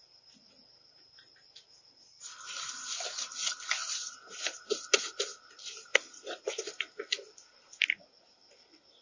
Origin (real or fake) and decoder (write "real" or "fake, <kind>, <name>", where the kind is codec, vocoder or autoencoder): real